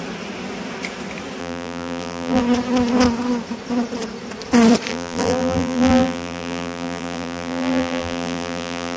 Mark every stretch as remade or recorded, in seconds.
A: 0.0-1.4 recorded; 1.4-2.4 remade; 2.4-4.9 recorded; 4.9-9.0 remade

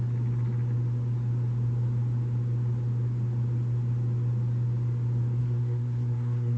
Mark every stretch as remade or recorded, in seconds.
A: 0.0-5.4 recorded; 5.4-6.6 remade

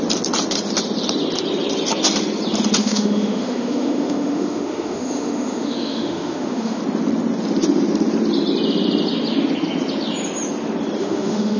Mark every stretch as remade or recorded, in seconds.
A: 0.0-2.8 recorded; 2.8-6.8 remade; 6.8-11.0 recorded; 11.0-11.6 remade

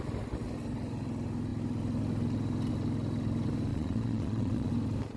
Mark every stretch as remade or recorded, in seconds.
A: 0.0-3.7 recorded; 3.7-4.7 remade; 4.7-5.2 recorded

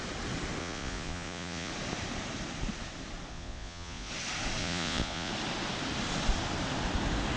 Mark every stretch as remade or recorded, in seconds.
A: 0.0-0.6 recorded; 0.6-1.7 remade; 1.7-3.3 recorded; 3.3-4.1 remade; 4.1-4.6 recorded; 4.6-5.3 remade; 5.3-7.4 recorded

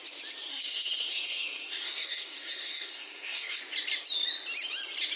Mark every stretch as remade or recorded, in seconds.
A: 0.0-0.5 recorded; 0.5-3.6 remade; 3.6-5.2 recorded

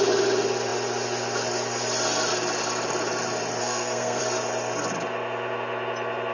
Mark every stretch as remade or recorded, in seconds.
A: 0.0-3.6 recorded; 3.6-4.2 remade; 4.2-6.3 recorded

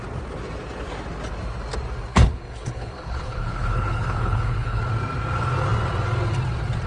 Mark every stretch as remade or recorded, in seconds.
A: 0.0-2.1 recorded; 2.1-4.8 remade; 4.8-6.9 recorded